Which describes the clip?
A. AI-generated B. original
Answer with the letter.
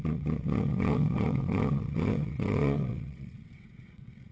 A